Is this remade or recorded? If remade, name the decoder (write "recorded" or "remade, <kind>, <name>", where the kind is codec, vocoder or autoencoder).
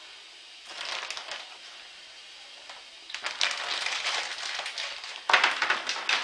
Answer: recorded